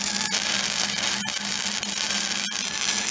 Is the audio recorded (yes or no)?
yes